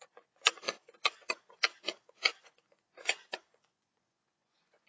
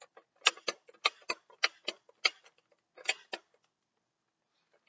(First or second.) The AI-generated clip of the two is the first